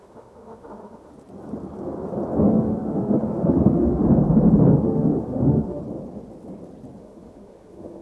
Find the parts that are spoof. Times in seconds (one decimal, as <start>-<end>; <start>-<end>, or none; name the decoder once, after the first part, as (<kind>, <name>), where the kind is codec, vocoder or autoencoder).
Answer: 0.0-1.1 (autoencoder, DAC-VAE); 2.4-4.0; 4.7-5.8; 7.0-8.0